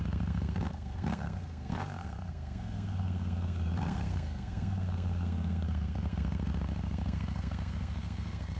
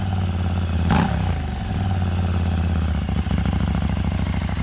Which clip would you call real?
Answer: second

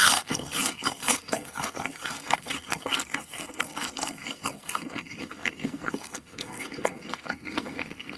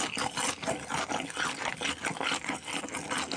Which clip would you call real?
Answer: second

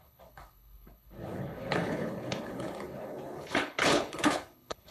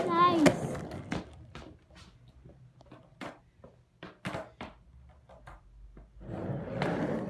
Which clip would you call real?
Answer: second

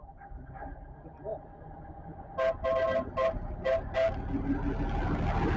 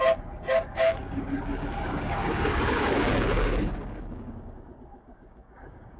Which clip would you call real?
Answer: first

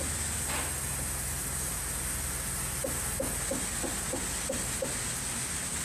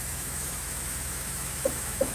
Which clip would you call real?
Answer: first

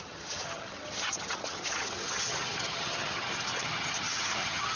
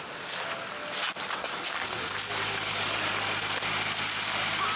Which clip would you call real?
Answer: second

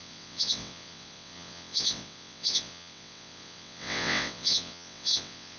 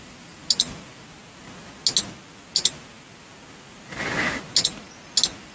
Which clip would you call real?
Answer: second